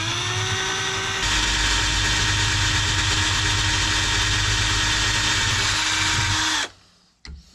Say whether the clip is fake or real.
real